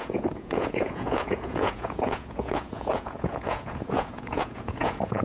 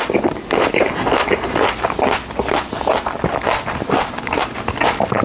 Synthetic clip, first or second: first